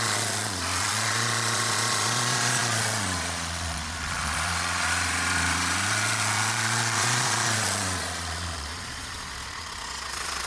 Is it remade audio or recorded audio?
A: remade